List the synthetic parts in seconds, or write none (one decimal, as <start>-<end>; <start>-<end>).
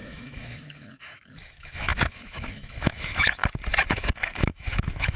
0.0-3.4; 3.9-5.2